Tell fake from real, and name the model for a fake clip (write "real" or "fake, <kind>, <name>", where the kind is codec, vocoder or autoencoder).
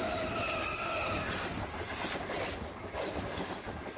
real